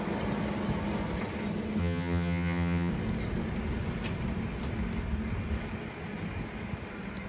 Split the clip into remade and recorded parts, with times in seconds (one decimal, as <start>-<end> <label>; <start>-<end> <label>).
0.0-1.8 recorded; 1.8-2.9 remade; 2.9-7.3 recorded